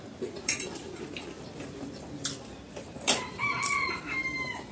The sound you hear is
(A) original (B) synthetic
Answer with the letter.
A